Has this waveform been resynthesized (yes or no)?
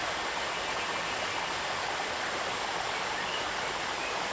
no